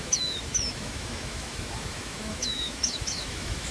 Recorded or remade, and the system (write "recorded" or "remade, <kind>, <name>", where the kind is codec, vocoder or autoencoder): remade, autoencoder, DAC-VAE